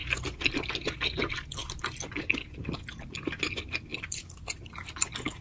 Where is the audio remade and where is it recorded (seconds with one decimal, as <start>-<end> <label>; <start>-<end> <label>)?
0.0-3.9 recorded; 3.9-4.6 remade; 4.6-5.4 recorded